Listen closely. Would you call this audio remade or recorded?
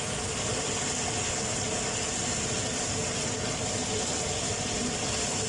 recorded